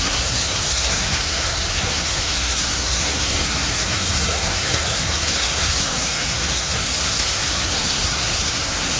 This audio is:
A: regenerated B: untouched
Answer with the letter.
A